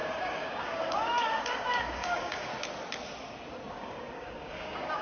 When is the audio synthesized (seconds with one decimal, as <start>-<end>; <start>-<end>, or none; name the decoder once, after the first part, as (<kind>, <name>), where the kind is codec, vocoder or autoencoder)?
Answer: 0.0-2.5 (codec, DAC); 3.7-5.0

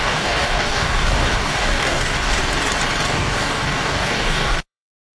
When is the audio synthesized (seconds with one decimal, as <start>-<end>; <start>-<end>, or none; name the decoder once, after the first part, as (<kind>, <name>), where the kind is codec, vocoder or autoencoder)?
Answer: 0.0-2.4 (codec, DAC); 3.1-5.1

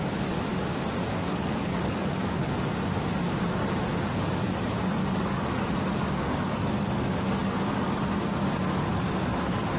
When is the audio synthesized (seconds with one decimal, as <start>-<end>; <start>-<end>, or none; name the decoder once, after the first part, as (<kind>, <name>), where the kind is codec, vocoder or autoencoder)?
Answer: 1.2-2.5 (codec, DAC); 5.0-7.6; 8.8-9.8

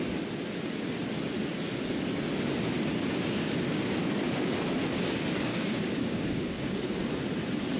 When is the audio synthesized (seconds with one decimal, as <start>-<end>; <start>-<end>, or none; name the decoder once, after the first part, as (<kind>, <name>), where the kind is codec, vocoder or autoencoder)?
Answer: 5.5-7.0 (codec, DAC)